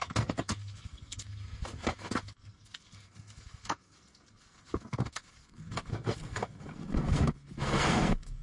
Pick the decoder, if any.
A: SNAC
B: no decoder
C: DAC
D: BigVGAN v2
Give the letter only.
A